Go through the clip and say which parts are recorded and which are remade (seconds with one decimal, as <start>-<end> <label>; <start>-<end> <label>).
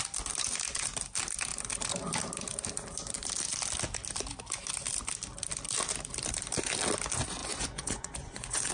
0.0-7.4 recorded; 7.4-8.7 remade